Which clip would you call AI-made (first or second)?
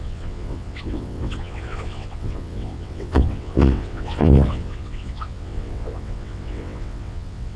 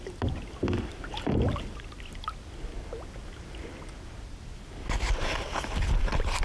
first